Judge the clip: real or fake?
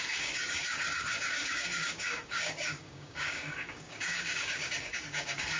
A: fake